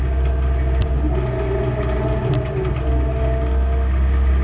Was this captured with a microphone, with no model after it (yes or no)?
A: yes